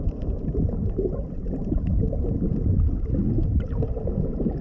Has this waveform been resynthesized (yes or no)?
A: no